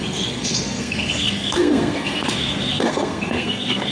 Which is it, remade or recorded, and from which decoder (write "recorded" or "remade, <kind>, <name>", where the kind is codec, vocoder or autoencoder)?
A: remade, codec, SNAC